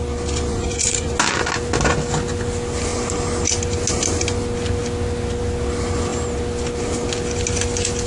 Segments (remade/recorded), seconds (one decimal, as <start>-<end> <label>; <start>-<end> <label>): 0.0-0.5 recorded; 0.5-1.1 remade; 1.1-8.1 recorded